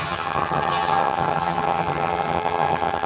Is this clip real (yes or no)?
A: no